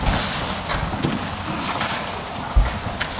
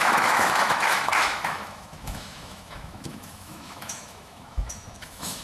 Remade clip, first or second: second